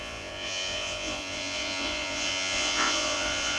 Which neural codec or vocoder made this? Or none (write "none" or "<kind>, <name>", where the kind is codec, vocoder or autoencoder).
vocoder, Vocos